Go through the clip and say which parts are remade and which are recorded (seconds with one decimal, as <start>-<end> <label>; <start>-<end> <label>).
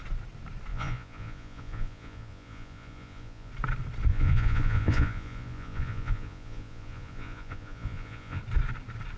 0.0-0.7 recorded; 0.7-3.5 remade; 3.5-4.1 recorded; 4.1-8.4 remade; 8.4-9.2 recorded